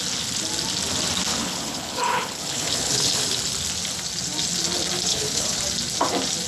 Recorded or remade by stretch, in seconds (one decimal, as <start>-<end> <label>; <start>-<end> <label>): 0.0-1.3 recorded; 1.3-3.4 remade; 3.4-5.1 recorded; 5.1-5.6 remade; 5.6-6.5 recorded